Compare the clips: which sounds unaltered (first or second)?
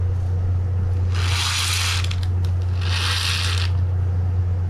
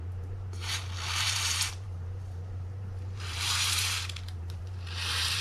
first